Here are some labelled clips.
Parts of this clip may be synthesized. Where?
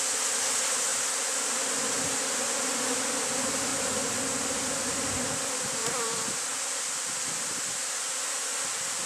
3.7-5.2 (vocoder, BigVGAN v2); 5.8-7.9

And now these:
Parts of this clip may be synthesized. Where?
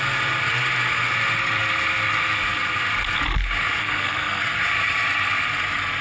3.8-4.4 (codec, SNAC)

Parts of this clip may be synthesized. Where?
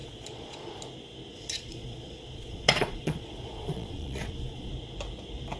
0.0-0.7 (vocoder, Vocos); 1.3-4.7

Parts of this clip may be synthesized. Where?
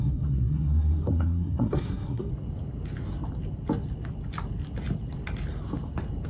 0.0-2.3 (codec, SNAC)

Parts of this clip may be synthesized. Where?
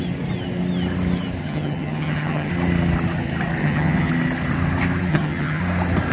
1.4-2.5 (vocoder, HiFi-GAN); 3.6-4.1; 5.1-5.6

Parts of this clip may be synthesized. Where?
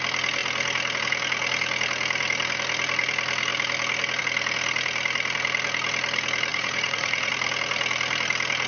6.5-7.3 (vocoder, Vocos)